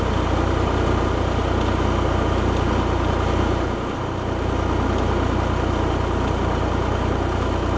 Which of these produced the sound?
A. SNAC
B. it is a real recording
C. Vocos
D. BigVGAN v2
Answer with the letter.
B